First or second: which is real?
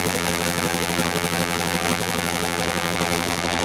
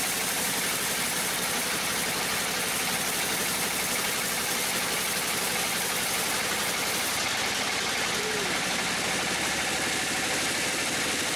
second